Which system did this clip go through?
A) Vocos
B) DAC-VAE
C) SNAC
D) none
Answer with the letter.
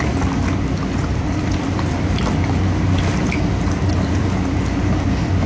D